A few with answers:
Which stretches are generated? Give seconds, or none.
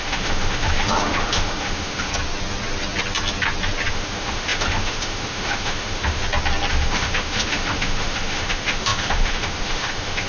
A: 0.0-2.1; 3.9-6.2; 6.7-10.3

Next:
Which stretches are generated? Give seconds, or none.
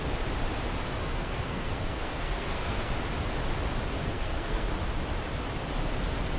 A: 1.0-2.9; 4.0-4.7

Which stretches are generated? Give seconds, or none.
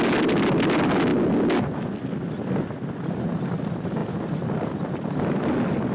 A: 4.0-5.4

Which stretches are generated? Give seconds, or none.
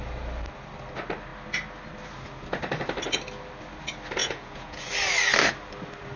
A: 4.2-4.9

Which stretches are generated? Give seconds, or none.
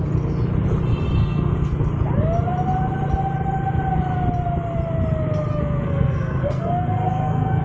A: 1.2-1.9; 5.5-7.6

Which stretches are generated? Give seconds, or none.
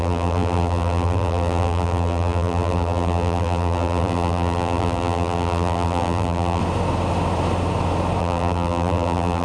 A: 0.0-6.6; 8.2-9.4